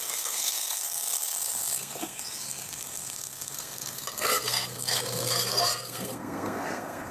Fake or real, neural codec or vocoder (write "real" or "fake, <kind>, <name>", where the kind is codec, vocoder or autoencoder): fake, codec, SNAC